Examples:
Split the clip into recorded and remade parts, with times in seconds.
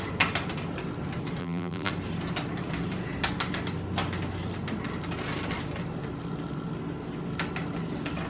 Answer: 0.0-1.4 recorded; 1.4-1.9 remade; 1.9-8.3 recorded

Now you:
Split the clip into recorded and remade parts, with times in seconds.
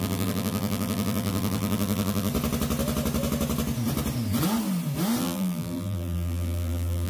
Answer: 0.0-2.3 remade; 2.3-5.2 recorded; 5.2-7.1 remade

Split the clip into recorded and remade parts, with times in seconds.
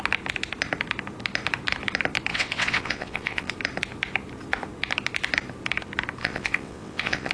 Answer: 0.0-2.3 recorded; 2.3-3.5 remade; 3.5-6.2 recorded; 6.2-7.3 remade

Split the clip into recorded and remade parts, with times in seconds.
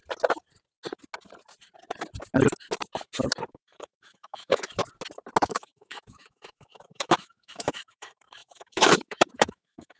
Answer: 0.0-3.5 recorded; 3.5-4.8 remade; 4.8-5.4 recorded; 5.4-10.0 remade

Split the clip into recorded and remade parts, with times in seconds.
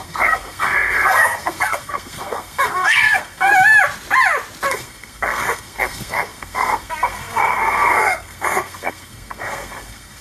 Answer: 0.0-3.5 remade; 3.5-4.7 recorded; 4.7-10.2 remade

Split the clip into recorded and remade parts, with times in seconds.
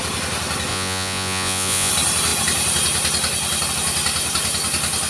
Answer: 0.0-0.7 recorded; 0.7-1.9 remade; 1.9-5.1 recorded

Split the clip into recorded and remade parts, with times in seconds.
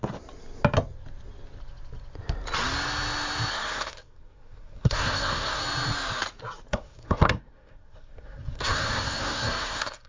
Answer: 0.0-3.5 recorded; 3.5-5.6 remade; 5.6-6.7 recorded; 6.7-10.1 remade